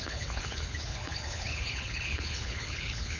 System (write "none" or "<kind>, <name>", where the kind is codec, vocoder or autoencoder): codec, HILCodec